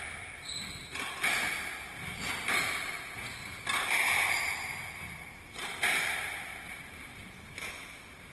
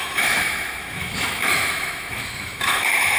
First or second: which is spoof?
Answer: second